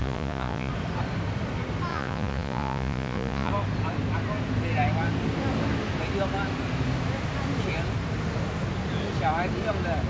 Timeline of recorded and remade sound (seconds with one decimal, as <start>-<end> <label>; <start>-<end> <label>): 0.0-0.7 remade; 0.7-1.9 recorded; 1.9-3.5 remade; 3.5-10.1 recorded